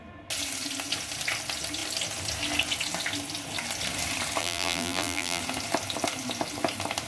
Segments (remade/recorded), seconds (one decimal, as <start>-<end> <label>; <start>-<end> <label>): 0.0-4.4 recorded; 4.4-5.4 remade; 5.4-7.1 recorded